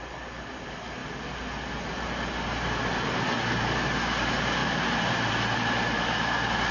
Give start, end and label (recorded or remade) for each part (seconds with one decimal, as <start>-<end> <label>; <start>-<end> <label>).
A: 0.0-6.7 recorded